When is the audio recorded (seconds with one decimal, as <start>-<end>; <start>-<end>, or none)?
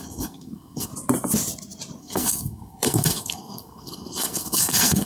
0.9-2.0